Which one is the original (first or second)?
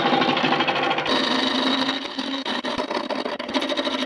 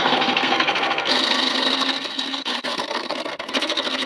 first